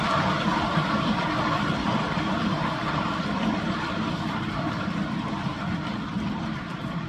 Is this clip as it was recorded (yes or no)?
no